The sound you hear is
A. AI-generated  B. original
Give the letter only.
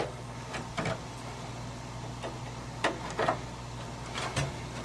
B